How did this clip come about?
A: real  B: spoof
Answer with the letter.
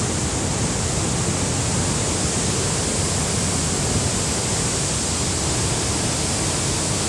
A